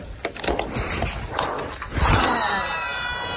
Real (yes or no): no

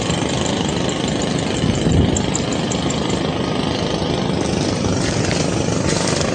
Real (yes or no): no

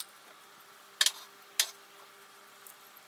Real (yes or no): yes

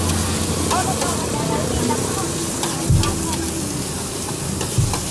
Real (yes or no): yes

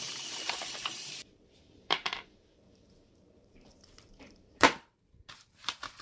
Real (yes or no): no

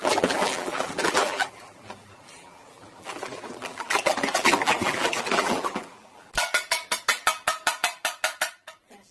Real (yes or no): no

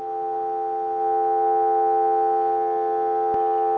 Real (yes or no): yes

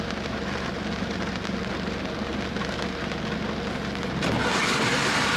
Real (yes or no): yes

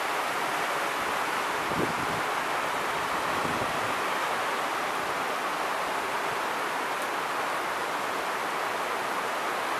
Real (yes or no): yes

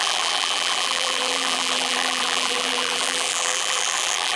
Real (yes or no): no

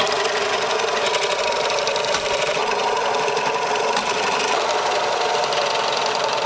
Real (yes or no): no